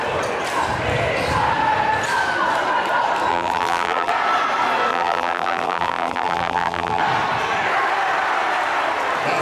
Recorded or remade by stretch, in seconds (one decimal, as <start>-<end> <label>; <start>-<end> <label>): 0.0-3.3 recorded; 3.3-4.1 remade; 4.1-4.9 recorded; 4.9-7.0 remade; 7.0-9.4 recorded